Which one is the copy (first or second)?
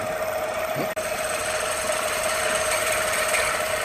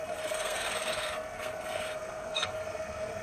second